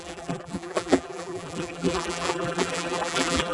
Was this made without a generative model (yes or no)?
no